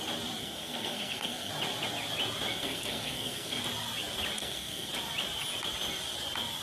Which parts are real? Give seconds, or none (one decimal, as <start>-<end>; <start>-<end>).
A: 0.0-0.4; 1.5-2.5; 3.6-4.4; 4.9-6.6